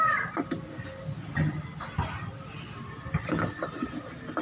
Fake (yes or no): no